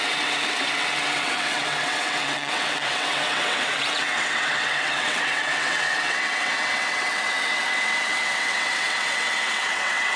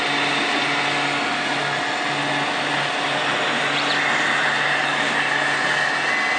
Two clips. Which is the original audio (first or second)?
second